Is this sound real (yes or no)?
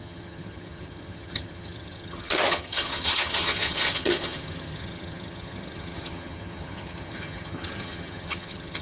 no